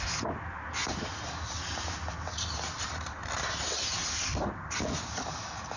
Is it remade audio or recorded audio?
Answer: recorded